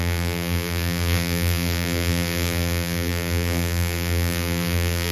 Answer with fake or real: fake